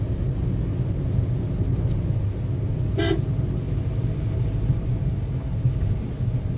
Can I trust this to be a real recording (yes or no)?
yes